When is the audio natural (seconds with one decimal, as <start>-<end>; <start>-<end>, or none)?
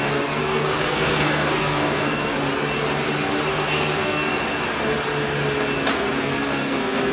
2.4-3.5; 4.3-6.2